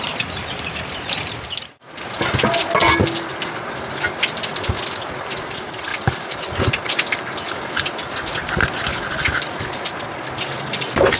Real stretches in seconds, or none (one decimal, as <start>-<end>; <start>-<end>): 0.0-11.2